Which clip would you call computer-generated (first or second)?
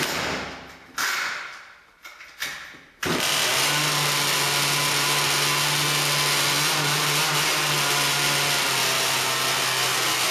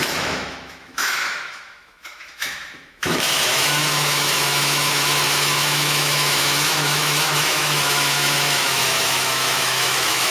second